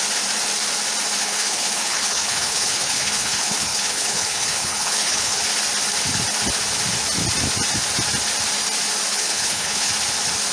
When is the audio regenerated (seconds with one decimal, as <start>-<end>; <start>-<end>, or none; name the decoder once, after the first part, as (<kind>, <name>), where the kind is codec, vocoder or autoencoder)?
1.2-5.4 (codec, HILCodec); 9.1-9.9